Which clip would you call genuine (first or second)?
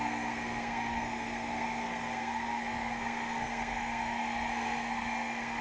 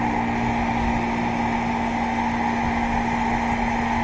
second